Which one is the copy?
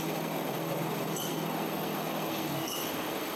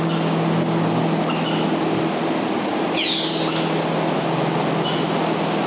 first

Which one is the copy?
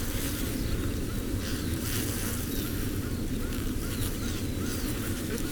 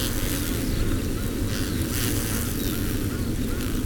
first